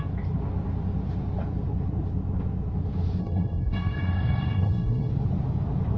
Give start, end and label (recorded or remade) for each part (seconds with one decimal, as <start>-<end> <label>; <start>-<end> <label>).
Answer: 0.0-3.2 recorded; 3.2-5.1 remade; 5.1-6.0 recorded